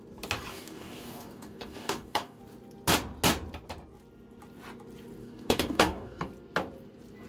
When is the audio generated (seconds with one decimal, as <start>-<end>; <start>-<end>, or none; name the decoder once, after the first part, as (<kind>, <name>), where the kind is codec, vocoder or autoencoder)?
0.5-2.4 (codec, DAC); 5.2-6.3